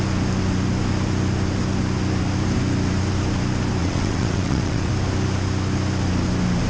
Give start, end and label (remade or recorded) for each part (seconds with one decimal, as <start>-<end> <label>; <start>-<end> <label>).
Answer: 0.0-3.8 recorded; 3.8-4.9 remade; 4.9-6.7 recorded